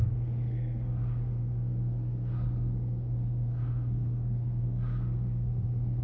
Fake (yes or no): yes